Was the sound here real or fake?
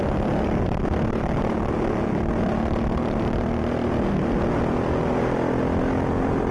real